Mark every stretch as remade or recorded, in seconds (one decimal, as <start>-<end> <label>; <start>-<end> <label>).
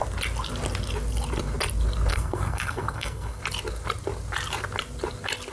0.0-2.1 recorded; 2.1-3.4 remade; 3.4-5.5 recorded